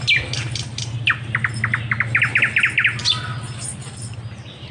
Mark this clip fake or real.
real